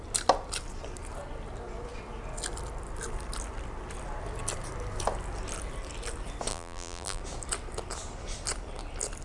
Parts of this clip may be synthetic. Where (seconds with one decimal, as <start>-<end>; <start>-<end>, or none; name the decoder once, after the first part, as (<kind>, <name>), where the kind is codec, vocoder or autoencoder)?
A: 6.5-7.2 (vocoder, BigVGAN v2)